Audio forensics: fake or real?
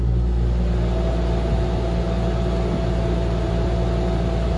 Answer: real